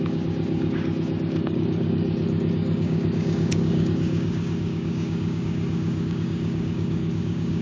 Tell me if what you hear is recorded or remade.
remade